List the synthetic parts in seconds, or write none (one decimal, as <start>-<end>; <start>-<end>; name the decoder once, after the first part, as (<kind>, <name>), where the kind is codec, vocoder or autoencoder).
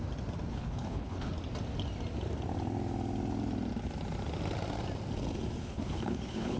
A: 0.5-1.3 (codec, HILCodec); 5.6-6.6